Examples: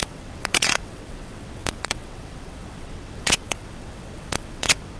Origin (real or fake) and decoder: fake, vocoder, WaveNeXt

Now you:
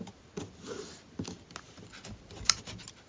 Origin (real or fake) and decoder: real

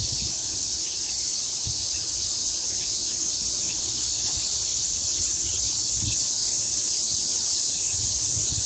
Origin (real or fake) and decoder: fake, codec, HILCodec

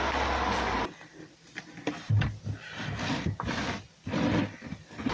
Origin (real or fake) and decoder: real